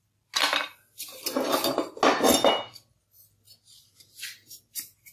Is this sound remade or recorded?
recorded